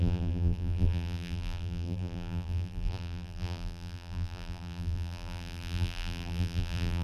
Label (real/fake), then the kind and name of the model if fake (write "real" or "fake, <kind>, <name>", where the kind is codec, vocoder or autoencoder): fake, vocoder, BigVGAN v2